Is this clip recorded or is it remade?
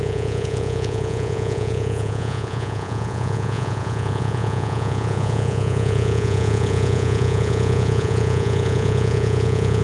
remade